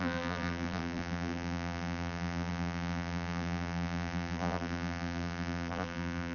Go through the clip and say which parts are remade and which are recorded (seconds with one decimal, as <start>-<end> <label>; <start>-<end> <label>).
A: 0.0-6.3 remade